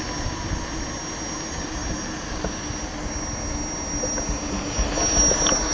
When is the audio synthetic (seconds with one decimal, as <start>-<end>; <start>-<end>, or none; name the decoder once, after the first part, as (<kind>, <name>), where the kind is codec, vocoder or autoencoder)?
none